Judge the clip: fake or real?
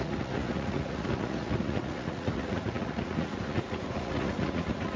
fake